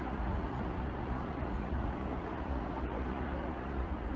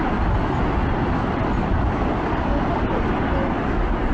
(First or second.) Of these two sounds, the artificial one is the first